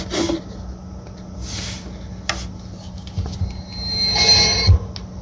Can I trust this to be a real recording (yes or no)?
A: yes